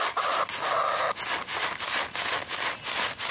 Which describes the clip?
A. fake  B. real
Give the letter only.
B